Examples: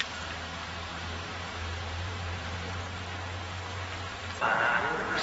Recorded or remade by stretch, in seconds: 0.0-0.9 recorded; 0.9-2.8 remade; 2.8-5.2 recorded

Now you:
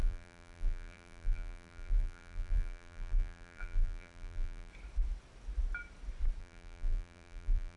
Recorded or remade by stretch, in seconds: 0.0-4.7 remade; 4.7-6.4 recorded; 6.4-7.8 remade